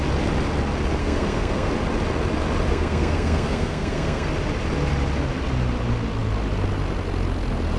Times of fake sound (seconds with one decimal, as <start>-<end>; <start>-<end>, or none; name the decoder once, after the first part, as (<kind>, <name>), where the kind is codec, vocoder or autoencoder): 1.0-1.7 (codec, SNAC); 2.7-4.3